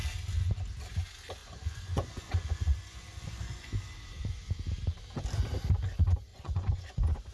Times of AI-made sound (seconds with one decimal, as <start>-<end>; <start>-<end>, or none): 1.4-3.8; 6.3-7.3